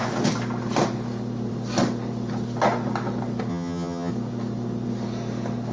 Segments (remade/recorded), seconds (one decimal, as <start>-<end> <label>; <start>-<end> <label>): 0.0-3.5 recorded; 3.5-4.1 remade; 4.1-5.7 recorded

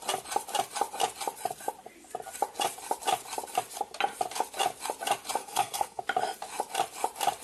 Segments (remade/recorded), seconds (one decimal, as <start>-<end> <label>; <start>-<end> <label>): 0.0-5.4 recorded; 5.4-6.0 remade; 6.0-7.4 recorded

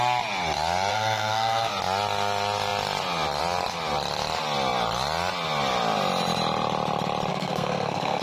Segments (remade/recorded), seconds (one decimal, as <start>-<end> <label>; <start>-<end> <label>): 0.0-0.9 recorded; 0.9-1.7 remade; 1.7-7.3 recorded; 7.3-8.2 remade

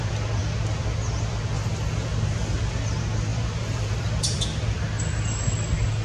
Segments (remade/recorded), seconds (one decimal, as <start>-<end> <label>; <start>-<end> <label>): 0.0-3.3 recorded; 3.3-4.4 remade; 4.4-6.0 recorded